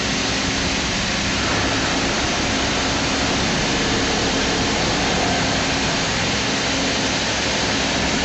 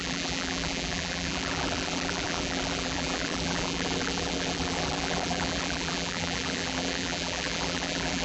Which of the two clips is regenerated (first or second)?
second